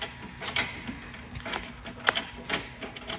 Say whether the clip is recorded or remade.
recorded